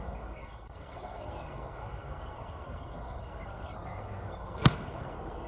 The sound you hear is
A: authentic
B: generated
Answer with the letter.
B